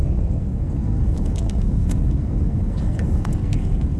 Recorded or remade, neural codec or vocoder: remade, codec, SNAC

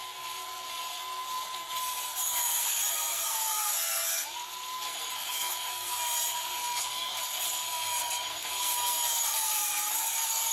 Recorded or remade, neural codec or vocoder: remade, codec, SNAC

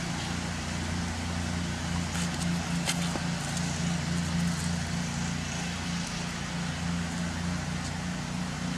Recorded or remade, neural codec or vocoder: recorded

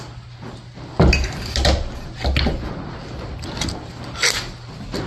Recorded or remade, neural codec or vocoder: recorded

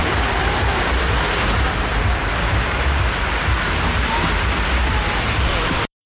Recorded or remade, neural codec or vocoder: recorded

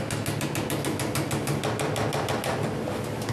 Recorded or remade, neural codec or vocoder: recorded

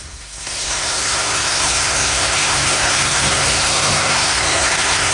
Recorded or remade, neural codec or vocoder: remade, codec, SNAC